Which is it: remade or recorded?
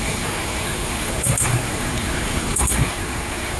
remade